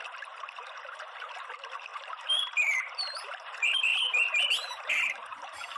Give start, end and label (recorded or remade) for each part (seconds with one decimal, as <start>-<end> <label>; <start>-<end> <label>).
0.0-5.8 remade